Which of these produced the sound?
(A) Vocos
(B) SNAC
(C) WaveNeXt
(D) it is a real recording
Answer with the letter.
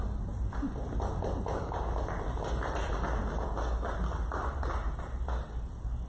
D